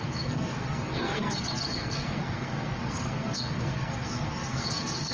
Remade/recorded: remade